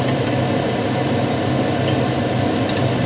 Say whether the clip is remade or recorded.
recorded